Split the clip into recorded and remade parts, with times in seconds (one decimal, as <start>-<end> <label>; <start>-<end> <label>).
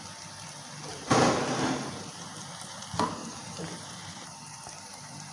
0.0-0.9 recorded; 0.9-2.8 remade; 2.8-3.2 recorded; 3.2-5.3 remade